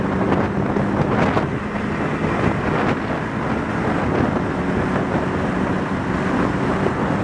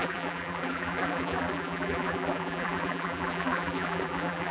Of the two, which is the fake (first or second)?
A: second